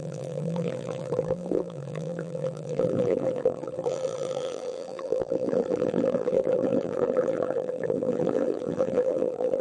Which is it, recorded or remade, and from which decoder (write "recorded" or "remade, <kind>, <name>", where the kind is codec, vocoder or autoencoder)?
remade, vocoder, BigVGAN v2